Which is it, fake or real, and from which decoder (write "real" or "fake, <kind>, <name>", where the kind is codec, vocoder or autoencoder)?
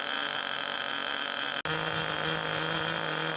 real